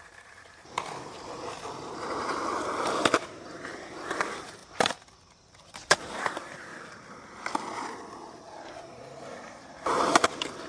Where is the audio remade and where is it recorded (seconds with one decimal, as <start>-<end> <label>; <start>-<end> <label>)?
0.0-6.7 remade; 6.7-7.7 recorded; 7.7-10.7 remade